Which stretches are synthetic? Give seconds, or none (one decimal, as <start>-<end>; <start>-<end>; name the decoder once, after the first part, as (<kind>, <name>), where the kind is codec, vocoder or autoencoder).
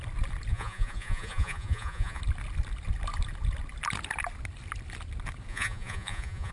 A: 0.5-2.2 (vocoder, Vocos); 5.5-6.5